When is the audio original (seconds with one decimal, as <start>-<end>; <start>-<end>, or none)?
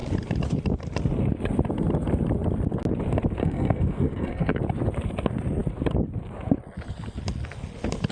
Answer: 0.0-3.4; 4.6-8.1